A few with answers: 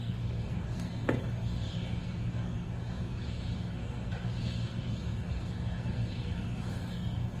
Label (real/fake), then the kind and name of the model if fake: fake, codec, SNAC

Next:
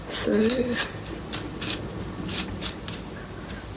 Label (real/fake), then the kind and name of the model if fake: real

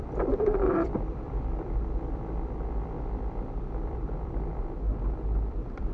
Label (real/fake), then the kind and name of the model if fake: fake, vocoder, BigVGAN v2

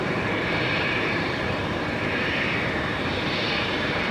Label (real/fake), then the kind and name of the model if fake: fake, vocoder, BigVGAN v2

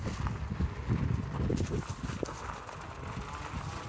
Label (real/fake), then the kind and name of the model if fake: real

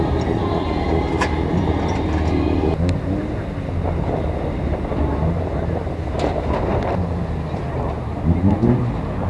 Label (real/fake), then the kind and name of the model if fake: real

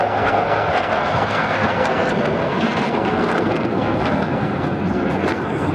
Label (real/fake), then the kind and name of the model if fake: fake, codec, SNAC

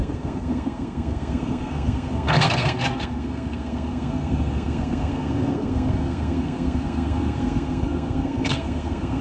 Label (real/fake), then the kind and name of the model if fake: fake, codec, SNAC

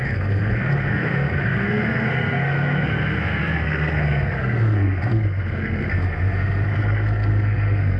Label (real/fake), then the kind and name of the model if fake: fake, codec, SNAC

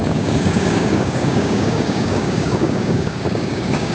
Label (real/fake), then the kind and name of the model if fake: fake, codec, DAC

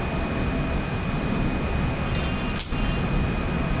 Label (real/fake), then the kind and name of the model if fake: real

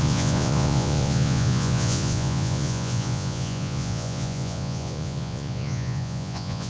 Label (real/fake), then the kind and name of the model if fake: fake, vocoder, Vocos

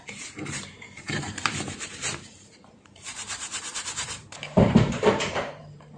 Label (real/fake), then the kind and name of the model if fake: fake, vocoder, BigVGAN v2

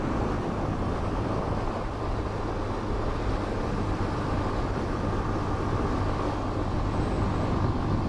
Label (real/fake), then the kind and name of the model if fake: fake, vocoder, BigVGAN v2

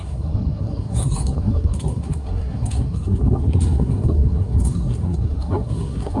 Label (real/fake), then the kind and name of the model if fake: fake, codec, SNAC